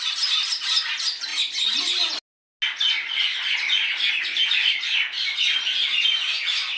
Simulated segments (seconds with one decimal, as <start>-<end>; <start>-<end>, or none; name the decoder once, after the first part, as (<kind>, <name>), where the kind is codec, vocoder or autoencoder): none